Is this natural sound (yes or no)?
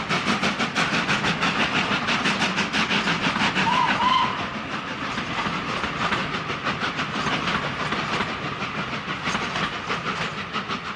yes